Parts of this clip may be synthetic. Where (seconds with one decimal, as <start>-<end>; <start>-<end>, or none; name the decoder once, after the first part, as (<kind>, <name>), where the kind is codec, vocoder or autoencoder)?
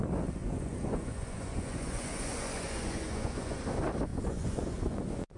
0.4-3.6 (vocoder, Vocos); 4.1-5.4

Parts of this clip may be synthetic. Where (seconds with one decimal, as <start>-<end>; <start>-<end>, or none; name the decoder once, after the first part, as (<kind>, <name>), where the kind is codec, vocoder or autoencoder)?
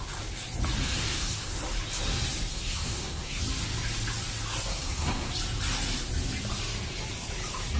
0.8-1.5 (codec, SNAC); 2.5-3.4; 4.7-5.3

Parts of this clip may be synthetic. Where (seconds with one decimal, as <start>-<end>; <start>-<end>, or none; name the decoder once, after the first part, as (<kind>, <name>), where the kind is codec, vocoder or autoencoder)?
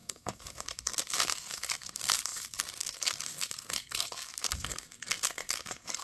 0.0-6.0 (codec, SNAC)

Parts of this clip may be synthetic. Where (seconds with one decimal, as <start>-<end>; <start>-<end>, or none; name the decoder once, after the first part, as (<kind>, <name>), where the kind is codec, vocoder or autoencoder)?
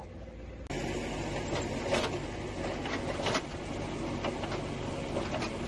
none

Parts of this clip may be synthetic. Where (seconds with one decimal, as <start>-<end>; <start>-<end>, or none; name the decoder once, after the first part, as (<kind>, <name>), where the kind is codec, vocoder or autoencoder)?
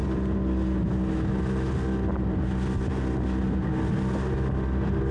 none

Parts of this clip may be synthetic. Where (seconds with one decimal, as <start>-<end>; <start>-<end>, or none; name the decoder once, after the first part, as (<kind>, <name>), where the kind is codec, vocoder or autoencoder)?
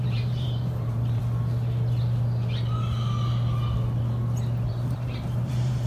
0.0-1.2 (vocoder, BigVGAN v2); 4.7-5.9